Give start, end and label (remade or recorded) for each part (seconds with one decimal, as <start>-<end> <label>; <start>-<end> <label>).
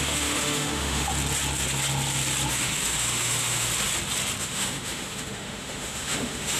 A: 0.0-1.1 remade; 1.1-2.5 recorded; 2.5-3.7 remade; 3.7-4.4 recorded; 4.4-6.6 remade